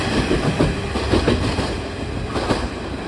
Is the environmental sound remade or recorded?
recorded